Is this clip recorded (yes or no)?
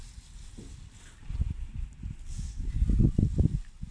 yes